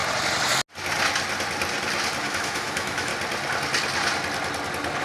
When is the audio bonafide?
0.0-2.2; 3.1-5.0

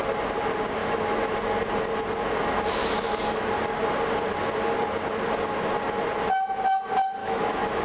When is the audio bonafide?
0.0-0.8; 1.3-2.8; 3.5-7.2

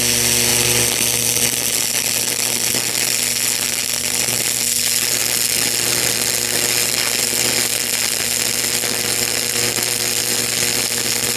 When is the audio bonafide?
0.0-11.4

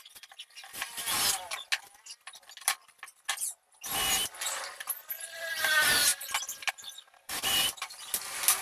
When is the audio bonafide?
0.0-8.6

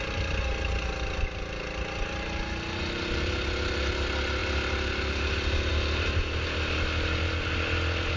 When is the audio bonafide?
0.0-8.2